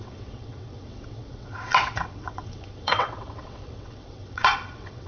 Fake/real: fake